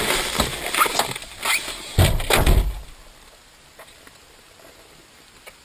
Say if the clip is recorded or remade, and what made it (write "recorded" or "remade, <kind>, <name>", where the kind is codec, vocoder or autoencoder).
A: recorded